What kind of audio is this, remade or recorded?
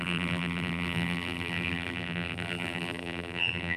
remade